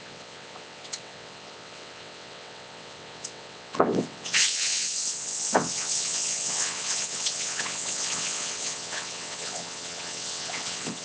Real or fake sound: fake